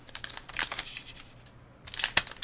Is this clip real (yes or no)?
yes